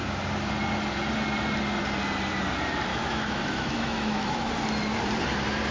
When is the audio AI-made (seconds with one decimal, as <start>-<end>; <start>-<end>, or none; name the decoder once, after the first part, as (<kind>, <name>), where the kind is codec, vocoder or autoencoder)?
2.9-4.5 (autoencoder, DAC-VAE)